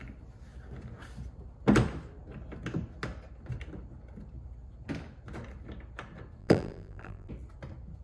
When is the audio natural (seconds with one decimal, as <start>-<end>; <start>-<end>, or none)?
0.0-6.4; 7.3-8.0

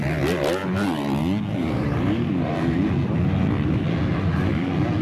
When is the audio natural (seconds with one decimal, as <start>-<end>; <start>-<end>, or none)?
0.0-1.6; 2.3-5.0